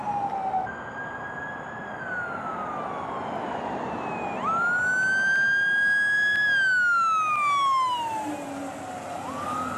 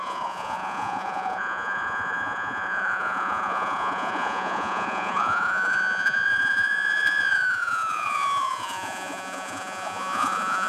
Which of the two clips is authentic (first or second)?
first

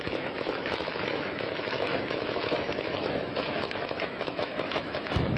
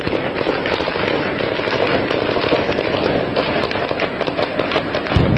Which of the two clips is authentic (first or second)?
second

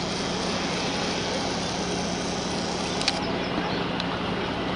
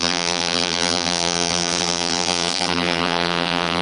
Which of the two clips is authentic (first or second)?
first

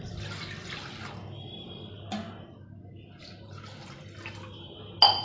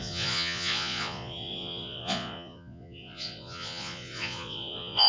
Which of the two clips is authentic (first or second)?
first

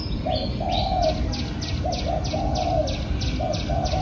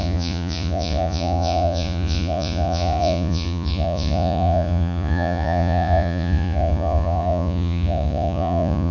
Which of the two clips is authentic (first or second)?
first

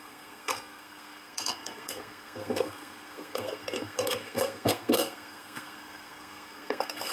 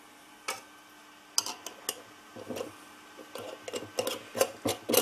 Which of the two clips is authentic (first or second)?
second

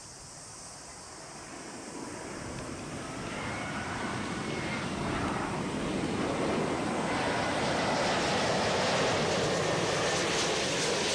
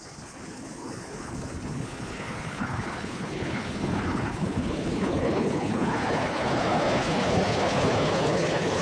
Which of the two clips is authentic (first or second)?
first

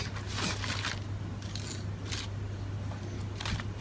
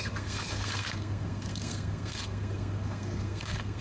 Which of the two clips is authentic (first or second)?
first